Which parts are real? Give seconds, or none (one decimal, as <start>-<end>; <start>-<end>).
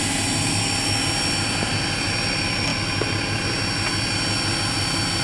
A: 0.0-5.2